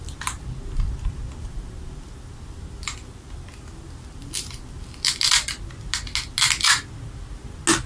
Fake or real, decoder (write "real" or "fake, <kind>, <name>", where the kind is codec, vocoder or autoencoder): real